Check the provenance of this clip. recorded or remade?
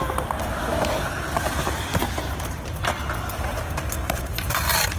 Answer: remade